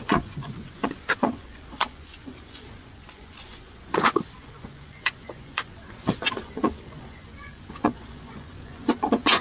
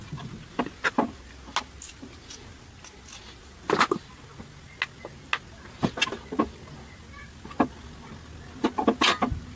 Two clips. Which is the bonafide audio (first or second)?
second